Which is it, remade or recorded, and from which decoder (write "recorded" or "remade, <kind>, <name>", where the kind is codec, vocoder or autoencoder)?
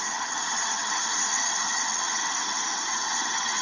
remade, vocoder, HiFi-GAN